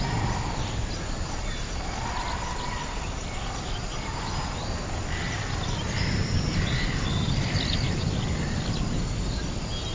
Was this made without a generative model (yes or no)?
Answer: yes